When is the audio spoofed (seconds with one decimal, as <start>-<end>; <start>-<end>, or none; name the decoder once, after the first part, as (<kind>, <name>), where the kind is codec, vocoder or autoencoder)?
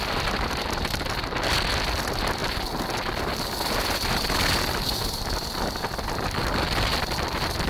none